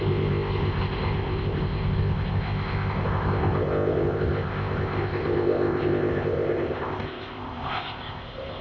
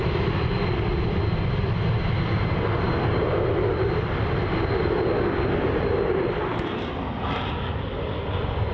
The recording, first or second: second